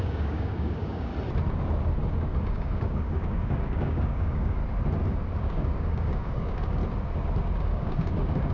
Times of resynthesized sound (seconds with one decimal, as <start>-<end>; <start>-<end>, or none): 0.0-1.1; 2.1-4.6; 5.4-6.8; 7.6-8.5